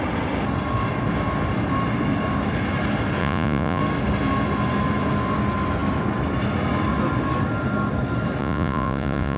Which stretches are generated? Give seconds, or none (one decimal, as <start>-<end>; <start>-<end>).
3.2-3.8; 8.4-9.4